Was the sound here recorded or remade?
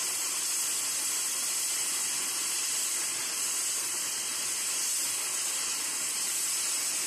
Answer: recorded